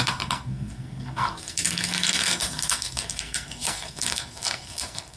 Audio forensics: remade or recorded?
remade